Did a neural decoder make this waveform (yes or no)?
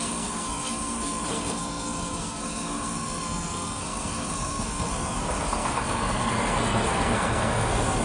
yes